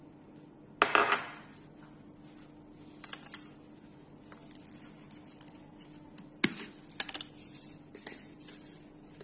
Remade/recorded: recorded